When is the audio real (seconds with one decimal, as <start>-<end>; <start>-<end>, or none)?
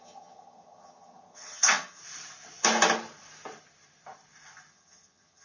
2.0-4.7